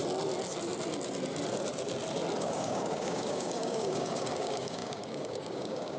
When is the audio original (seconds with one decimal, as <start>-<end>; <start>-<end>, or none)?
0.0-2.4